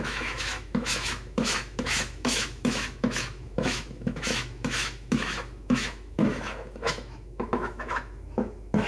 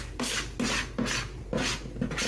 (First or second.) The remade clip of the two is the first